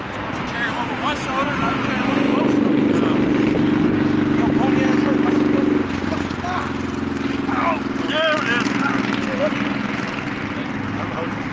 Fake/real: real